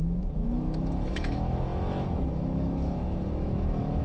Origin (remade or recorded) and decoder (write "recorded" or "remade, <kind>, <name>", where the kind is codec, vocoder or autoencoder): remade, autoencoder, DAC-VAE